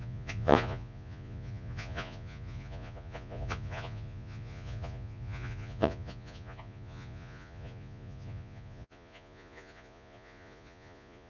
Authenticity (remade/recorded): remade